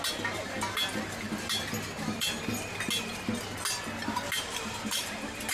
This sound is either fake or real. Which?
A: real